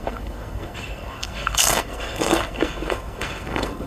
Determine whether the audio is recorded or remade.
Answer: remade